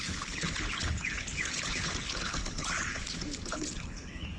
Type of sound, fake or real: fake